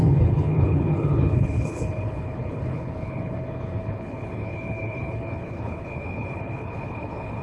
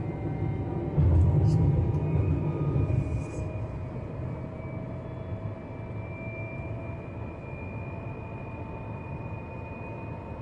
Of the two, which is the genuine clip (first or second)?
second